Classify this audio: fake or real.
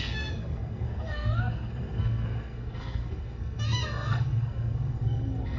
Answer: fake